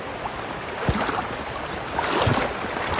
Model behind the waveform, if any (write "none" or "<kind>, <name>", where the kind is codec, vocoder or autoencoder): none